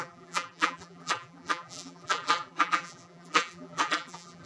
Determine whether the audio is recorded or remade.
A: remade